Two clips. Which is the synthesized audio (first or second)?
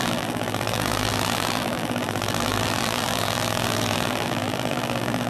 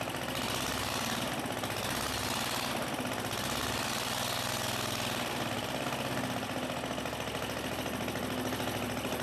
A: first